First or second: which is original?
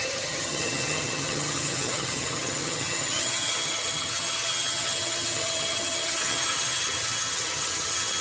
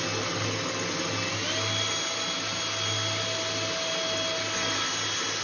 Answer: second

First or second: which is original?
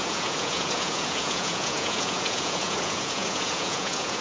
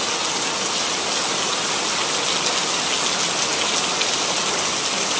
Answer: second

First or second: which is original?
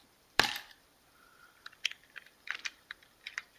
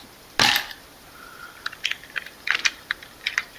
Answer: second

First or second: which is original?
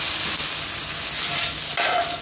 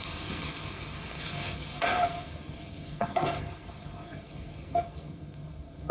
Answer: first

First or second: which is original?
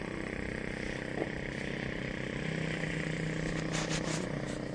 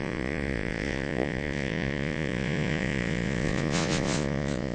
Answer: first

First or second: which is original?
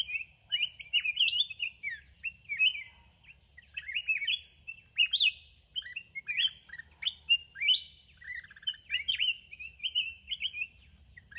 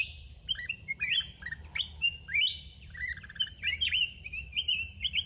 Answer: first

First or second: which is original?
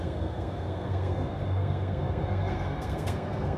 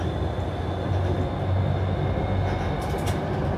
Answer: second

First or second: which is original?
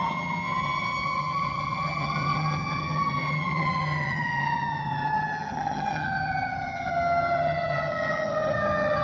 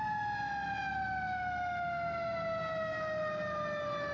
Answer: second